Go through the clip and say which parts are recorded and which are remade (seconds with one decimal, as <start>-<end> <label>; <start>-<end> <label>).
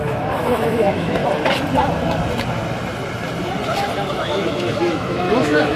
0.0-1.2 remade; 1.2-4.1 recorded; 4.1-5.8 remade